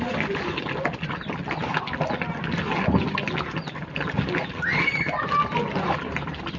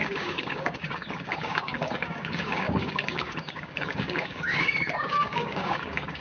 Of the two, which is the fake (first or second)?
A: second